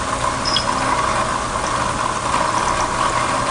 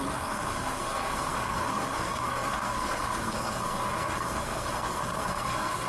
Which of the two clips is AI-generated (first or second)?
second